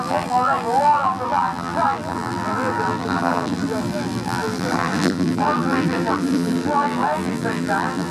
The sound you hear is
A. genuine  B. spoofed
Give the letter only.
B